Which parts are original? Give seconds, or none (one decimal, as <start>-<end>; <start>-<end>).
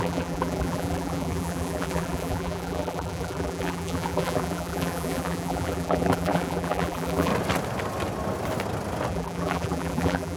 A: 7.3-9.1